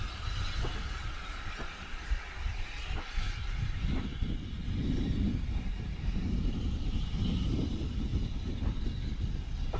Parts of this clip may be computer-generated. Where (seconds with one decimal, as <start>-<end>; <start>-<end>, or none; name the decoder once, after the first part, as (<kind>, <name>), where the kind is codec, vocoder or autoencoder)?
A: 0.0-4.1 (vocoder, BigVGAN v2); 4.8-8.1